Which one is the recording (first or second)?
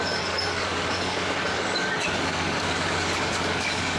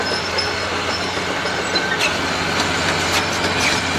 second